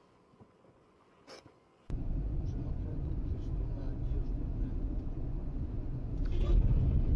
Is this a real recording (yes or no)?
no